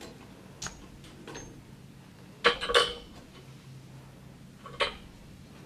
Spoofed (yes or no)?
no